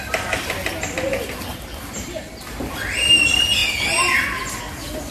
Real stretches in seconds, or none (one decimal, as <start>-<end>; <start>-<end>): 0.0-1.5; 3.2-5.1